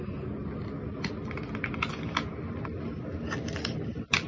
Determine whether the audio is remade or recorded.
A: recorded